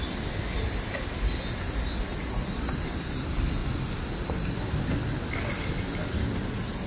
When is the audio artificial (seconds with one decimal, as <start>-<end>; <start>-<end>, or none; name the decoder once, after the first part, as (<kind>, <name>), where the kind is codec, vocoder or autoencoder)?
none